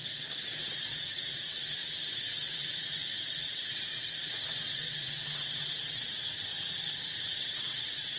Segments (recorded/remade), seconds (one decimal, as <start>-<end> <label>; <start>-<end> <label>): 0.0-6.5 remade; 6.5-7.3 recorded; 7.3-8.2 remade